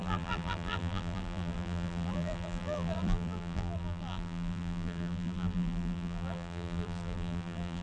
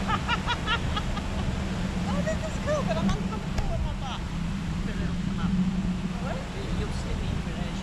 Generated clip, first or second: first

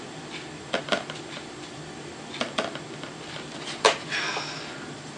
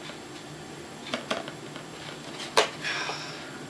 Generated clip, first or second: first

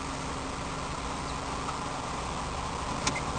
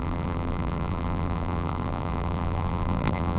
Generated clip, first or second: second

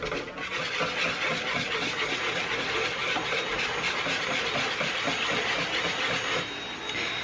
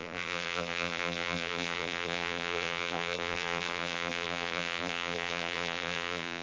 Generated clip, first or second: second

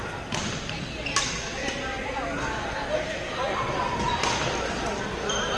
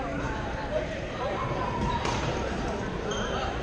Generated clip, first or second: second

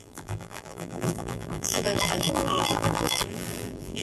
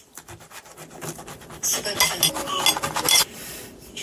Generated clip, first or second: first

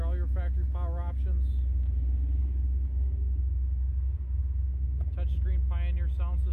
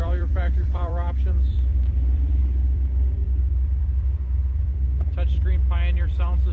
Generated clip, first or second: second